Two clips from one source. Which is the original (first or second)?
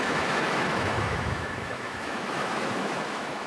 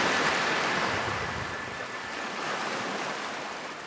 second